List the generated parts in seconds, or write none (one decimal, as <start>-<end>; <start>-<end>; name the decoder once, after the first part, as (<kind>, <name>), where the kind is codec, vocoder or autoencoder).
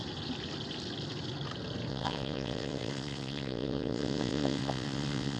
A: 1.9-5.4 (vocoder, WaveNeXt)